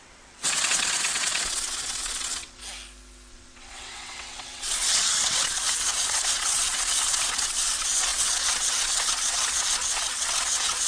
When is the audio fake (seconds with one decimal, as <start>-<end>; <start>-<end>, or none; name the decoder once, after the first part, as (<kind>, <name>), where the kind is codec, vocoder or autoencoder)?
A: 0.0-2.6 (vocoder, WaveNeXt); 3.3-10.9